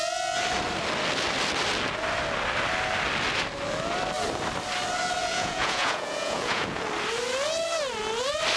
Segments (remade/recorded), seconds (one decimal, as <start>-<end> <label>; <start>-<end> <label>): 0.0-5.2 recorded; 5.2-6.8 remade; 6.8-8.6 recorded